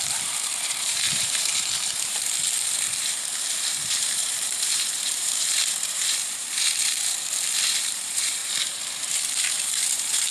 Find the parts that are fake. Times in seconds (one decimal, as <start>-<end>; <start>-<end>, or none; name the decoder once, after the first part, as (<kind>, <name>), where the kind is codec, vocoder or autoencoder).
0.0-10.3 (vocoder, BigVGAN v2)